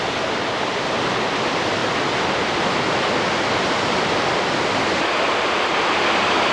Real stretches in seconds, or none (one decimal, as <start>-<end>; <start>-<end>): 0.0-6.5